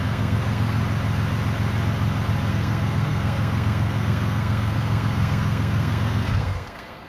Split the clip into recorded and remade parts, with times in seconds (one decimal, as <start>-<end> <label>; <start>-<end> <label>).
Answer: 0.0-0.8 remade; 0.8-2.5 recorded; 2.5-7.1 remade